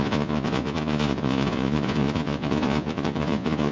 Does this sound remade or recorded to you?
remade